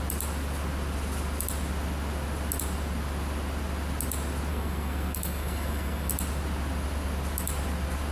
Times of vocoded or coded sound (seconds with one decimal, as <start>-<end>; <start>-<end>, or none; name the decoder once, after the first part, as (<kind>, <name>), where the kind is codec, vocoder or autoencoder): 4.5-6.1 (codec, SNAC)